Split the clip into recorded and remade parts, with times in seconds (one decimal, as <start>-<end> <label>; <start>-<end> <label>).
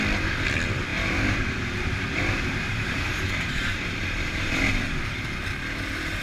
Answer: 0.0-0.9 recorded; 0.9-4.6 remade; 4.6-6.2 recorded